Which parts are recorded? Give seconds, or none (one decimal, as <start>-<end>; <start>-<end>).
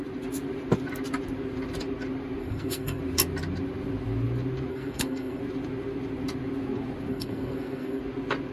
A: 0.0-2.4; 3.0-4.7; 5.4-7.1; 8.0-8.5